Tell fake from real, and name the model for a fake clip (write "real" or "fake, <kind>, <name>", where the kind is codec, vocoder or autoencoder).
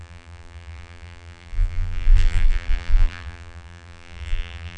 fake, vocoder, BigVGAN v2